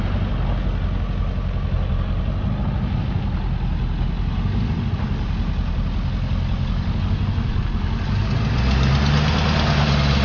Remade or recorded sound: recorded